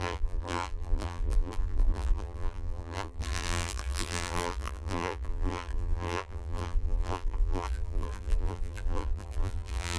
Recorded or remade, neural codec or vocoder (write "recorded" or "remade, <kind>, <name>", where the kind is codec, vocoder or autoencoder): remade, vocoder, BigVGAN v2